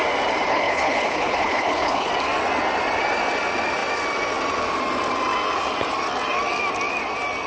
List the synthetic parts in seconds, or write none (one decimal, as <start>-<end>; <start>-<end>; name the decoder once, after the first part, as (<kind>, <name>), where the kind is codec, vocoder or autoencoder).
0.5-2.1 (codec, HILCodec)